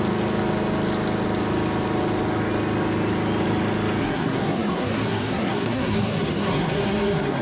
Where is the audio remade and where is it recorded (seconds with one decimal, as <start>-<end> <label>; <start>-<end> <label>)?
0.0-4.0 recorded; 4.0-7.4 remade